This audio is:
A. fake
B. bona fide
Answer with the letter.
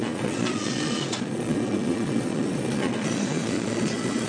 A